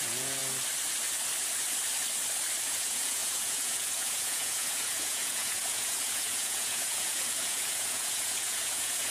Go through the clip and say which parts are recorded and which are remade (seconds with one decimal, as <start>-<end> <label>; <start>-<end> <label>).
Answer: 0.0-0.4 remade; 0.4-2.7 recorded; 2.7-9.1 remade